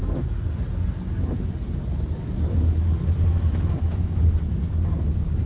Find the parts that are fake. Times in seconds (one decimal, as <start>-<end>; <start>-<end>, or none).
none